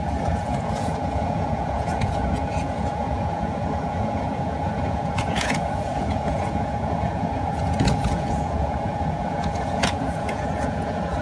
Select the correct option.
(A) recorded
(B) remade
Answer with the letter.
B